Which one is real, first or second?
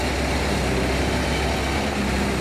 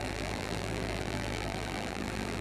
first